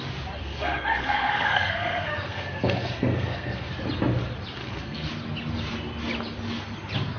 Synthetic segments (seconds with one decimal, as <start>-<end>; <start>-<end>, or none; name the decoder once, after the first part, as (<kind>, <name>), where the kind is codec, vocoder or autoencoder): 0.4-3.7 (codec, SNAC); 4.6-5.1